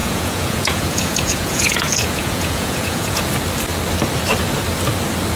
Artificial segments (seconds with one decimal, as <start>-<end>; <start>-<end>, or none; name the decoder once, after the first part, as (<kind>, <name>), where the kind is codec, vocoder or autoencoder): 0.0-3.2 (vocoder, Vocos)